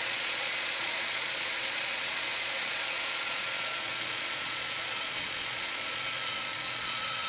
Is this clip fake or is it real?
fake